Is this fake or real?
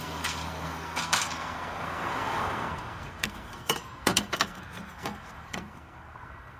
fake